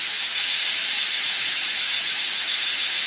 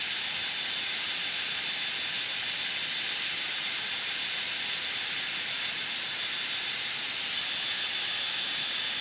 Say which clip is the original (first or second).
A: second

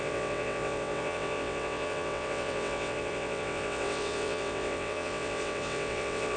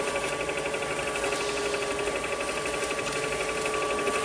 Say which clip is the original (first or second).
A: second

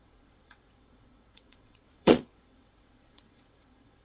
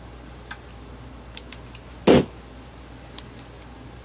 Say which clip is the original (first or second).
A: second